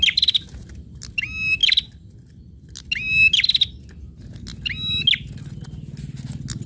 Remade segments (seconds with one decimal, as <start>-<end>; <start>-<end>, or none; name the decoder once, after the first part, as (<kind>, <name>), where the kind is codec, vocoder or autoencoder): none